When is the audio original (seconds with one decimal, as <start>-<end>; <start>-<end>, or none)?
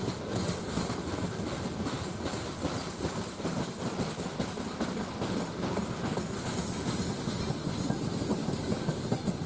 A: 0.0-8.3; 9.1-9.5